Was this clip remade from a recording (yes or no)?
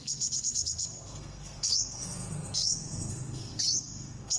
yes